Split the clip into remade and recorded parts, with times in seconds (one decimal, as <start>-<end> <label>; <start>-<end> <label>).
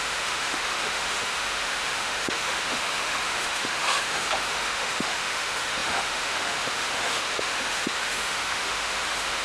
0.0-9.4 remade